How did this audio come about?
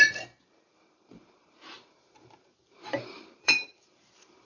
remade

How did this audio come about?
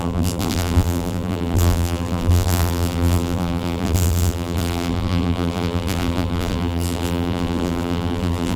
remade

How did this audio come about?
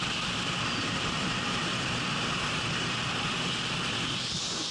remade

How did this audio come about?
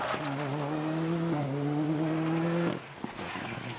recorded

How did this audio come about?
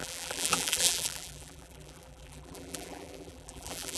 remade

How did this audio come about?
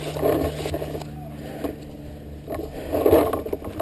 recorded